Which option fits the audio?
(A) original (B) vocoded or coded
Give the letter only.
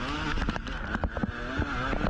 A